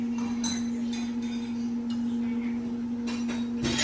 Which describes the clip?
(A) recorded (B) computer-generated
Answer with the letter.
A